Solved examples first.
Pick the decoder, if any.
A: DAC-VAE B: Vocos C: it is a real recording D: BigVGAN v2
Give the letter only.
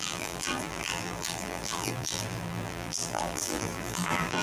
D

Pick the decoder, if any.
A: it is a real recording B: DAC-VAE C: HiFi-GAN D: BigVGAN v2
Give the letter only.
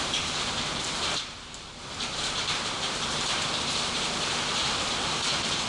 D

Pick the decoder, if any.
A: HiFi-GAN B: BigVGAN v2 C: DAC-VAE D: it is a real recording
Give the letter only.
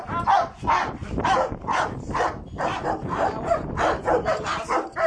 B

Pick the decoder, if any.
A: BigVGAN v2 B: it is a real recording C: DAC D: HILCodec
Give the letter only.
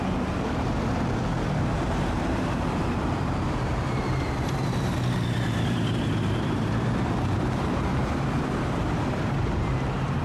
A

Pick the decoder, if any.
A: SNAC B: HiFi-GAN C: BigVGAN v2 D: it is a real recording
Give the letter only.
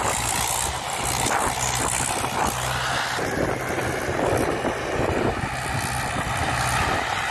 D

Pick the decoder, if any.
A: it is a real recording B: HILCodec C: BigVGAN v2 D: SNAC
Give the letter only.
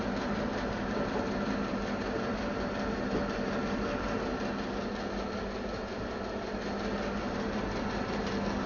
A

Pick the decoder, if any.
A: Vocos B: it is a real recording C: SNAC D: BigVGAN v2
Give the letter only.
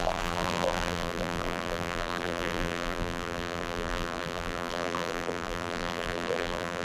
D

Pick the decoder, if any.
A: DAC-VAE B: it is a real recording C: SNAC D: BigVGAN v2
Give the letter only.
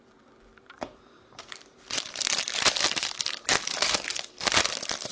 D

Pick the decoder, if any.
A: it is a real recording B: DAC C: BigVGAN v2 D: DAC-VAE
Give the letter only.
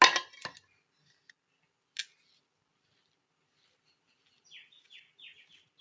A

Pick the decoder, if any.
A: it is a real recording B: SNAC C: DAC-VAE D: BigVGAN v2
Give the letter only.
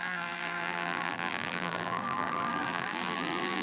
D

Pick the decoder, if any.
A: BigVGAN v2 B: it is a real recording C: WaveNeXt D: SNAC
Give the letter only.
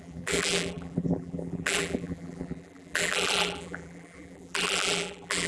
A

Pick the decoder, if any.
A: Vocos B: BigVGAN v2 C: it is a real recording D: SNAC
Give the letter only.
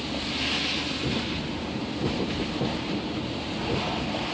C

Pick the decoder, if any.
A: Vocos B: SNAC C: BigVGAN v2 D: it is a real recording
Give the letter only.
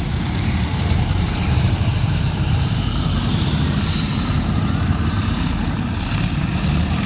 C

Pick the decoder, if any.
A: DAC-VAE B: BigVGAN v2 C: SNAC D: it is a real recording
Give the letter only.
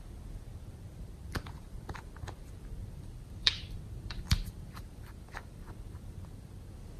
B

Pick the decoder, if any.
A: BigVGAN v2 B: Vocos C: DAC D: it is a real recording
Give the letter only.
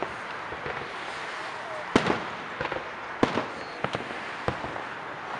D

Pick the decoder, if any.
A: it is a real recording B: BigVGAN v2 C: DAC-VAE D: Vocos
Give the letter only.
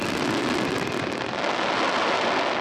A